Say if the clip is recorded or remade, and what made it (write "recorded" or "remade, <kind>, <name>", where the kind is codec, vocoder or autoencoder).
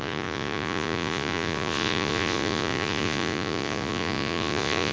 remade, vocoder, Vocos